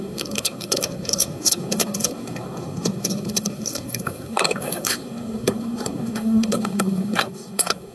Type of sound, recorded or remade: remade